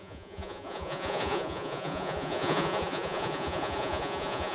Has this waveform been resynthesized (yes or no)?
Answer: yes